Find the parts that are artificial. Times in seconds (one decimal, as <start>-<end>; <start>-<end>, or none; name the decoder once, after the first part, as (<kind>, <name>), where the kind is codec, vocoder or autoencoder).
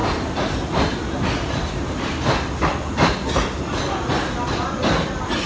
none